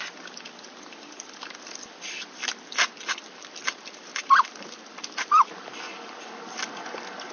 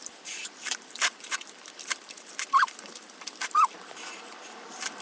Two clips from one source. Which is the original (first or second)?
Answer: first